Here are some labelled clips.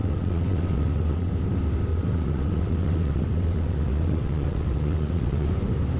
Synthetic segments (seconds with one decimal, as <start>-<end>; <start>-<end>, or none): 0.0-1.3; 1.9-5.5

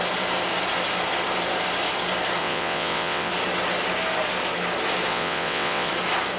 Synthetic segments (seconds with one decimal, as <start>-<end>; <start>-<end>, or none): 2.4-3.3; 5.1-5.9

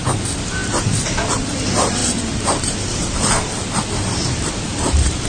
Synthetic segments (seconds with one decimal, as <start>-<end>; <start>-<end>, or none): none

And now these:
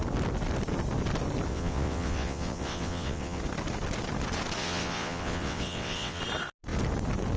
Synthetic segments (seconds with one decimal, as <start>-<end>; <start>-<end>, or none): 1.5-3.4; 4.6-6.2

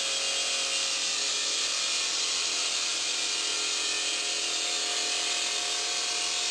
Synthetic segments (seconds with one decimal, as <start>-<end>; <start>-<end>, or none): none

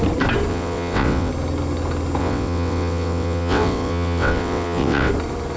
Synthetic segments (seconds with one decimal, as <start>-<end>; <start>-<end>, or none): 0.5-1.3; 2.2-5.1